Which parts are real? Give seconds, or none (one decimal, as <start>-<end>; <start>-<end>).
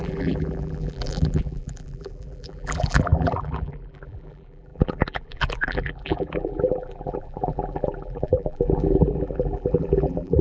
none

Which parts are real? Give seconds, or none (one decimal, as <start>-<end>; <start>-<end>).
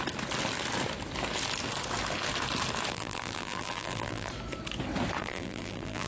0.0-2.9; 4.3-5.2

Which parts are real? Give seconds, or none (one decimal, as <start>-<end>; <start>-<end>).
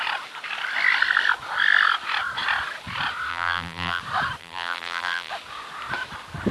0.0-3.3; 4.0-4.4; 5.3-6.5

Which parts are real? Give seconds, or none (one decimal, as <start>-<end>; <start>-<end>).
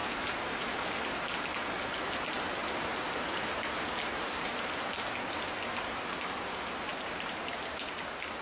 1.1-4.1; 4.7-6.9; 8.0-8.4